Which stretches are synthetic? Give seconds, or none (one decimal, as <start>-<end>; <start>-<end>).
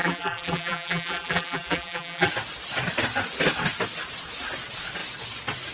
0.0-2.3